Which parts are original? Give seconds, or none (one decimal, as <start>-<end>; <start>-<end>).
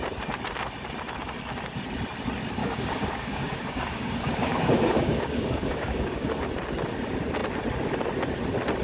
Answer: 0.0-2.6; 6.5-8.8